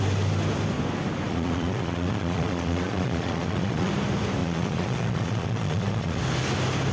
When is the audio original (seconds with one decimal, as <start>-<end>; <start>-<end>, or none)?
0.0-1.3; 3.9-4.4; 6.2-6.9